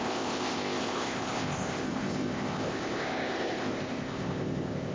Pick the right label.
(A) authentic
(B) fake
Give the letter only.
B